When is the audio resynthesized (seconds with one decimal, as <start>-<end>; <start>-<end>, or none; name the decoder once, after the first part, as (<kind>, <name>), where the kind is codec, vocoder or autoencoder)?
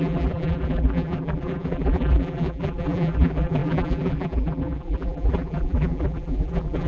0.0-6.9 (vocoder, BigVGAN v2)